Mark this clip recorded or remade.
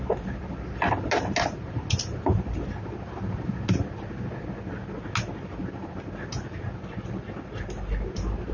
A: recorded